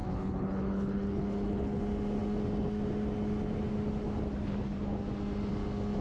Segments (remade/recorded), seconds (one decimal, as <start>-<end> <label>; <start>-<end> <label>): 0.0-1.8 remade; 1.8-6.0 recorded